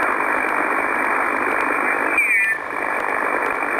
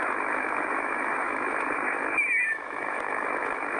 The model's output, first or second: second